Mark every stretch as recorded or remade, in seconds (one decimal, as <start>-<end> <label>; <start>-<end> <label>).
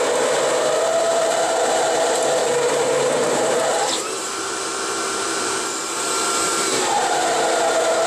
0.0-0.9 recorded; 0.9-1.6 remade; 1.6-2.4 recorded; 2.4-7.2 remade; 7.2-8.1 recorded